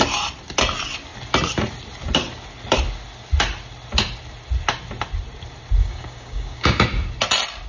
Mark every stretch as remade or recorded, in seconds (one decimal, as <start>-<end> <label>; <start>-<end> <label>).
0.0-5.8 recorded; 5.8-6.8 remade; 6.8-7.7 recorded